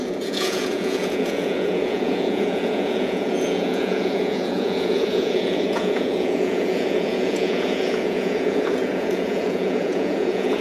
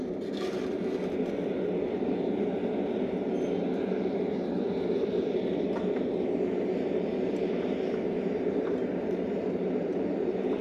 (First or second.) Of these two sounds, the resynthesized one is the first